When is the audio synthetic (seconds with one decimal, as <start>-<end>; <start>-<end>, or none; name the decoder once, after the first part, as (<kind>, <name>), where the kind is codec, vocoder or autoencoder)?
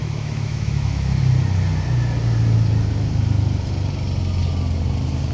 0.0-1.2 (autoencoder, DAC-VAE)